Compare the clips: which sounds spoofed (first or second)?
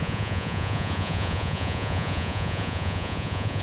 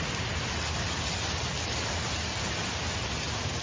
first